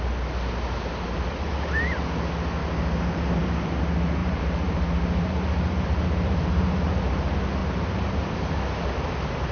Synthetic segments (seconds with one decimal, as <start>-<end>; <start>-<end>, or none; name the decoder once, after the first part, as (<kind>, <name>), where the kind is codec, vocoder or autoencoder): 2.6-3.8 (vocoder, BigVGAN v2); 4.2-7.0; 7.6-8.5